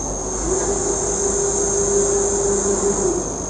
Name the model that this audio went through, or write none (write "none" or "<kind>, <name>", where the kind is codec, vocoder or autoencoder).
none